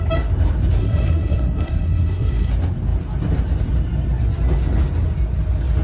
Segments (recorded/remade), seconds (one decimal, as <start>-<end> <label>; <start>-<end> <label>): 0.0-0.8 recorded; 0.8-2.5 remade; 2.5-5.8 recorded